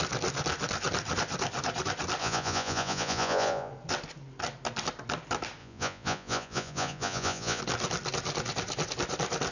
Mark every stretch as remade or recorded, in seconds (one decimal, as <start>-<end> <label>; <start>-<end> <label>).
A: 0.0-2.2 recorded; 2.2-3.7 remade; 3.7-5.6 recorded; 5.6-7.6 remade; 7.6-9.5 recorded